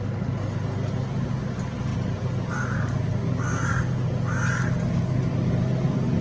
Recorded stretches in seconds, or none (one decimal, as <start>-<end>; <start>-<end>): 0.0-6.2